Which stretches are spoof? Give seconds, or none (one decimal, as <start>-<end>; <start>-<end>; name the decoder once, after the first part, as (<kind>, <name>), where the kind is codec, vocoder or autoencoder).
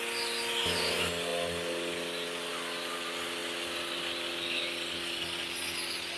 none